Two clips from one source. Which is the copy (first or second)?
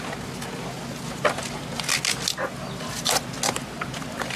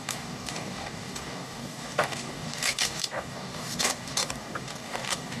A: second